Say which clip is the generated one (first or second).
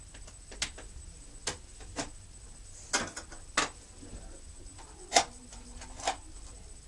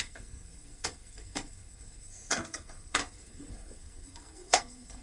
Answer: second